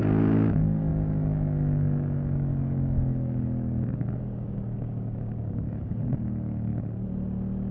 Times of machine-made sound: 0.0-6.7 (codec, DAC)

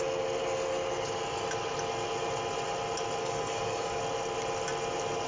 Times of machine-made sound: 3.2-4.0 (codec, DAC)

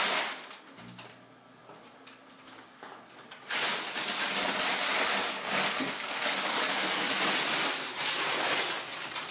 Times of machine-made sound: 5.2-7.2 (codec, DAC)